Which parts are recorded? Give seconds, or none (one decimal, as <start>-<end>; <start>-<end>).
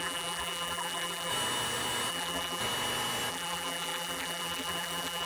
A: 1.3-2.1; 2.6-3.3